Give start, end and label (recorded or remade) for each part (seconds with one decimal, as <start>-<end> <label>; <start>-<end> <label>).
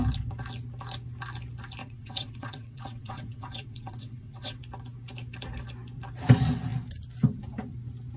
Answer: 0.0-1.8 recorded; 1.8-4.6 remade; 4.6-8.2 recorded